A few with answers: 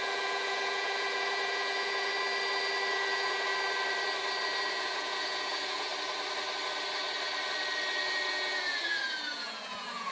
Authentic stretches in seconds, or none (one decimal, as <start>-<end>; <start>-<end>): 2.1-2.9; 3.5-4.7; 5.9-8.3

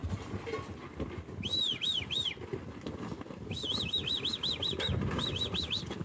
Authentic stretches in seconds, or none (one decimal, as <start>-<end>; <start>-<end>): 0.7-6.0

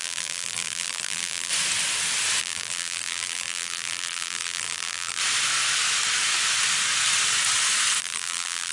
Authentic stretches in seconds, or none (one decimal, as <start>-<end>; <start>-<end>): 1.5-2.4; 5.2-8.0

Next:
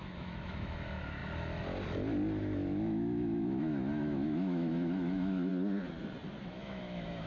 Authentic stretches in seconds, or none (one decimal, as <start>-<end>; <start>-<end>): 1.2-2.4; 5.5-6.4

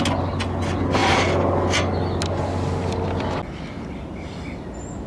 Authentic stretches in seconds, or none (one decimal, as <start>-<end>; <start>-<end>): 0.0-5.1

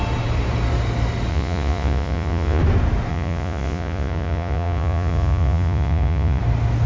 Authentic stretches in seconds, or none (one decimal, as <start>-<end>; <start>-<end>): 0.0-1.3; 2.6-3.1; 6.4-6.9

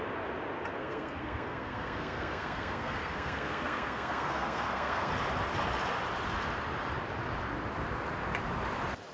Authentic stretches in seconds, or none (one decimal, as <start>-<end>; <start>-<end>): 0.0-0.8; 5.1-9.1